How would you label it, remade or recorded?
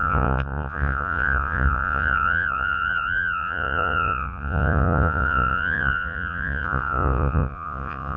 remade